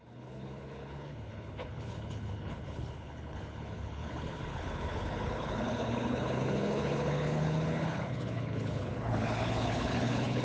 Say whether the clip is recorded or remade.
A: remade